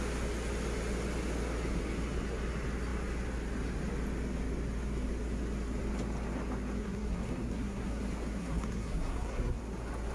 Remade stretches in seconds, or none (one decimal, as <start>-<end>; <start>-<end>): 6.8-8.0; 8.4-9.6